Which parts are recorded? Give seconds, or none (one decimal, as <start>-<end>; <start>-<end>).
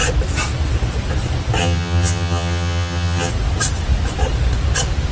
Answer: 0.0-1.6; 3.3-5.1